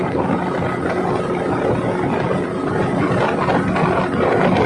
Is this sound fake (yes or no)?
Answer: no